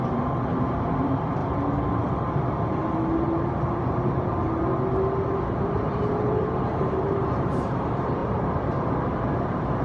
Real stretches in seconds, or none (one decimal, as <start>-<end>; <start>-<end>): 1.4-5.6